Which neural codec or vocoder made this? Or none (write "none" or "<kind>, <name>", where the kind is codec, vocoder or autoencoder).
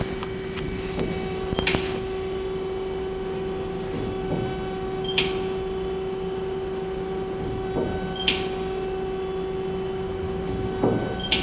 none